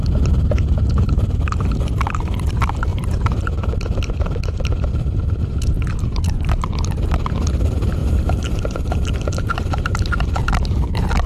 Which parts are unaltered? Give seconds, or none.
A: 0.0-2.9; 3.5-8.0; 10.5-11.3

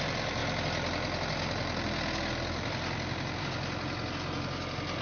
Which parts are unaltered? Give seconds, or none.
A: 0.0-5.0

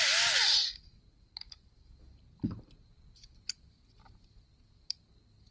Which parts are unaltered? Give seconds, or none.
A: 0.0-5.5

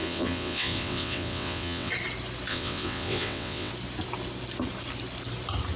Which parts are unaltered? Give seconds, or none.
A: 1.9-2.5; 3.7-5.8

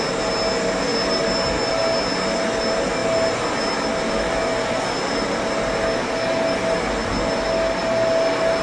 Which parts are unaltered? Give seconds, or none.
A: 0.0-8.6

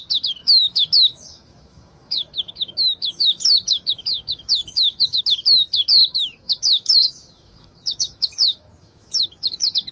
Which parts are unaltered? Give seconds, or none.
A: 0.0-0.4; 5.2-6.0